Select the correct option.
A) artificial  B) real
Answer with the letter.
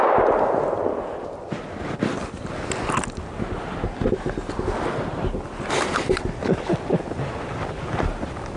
B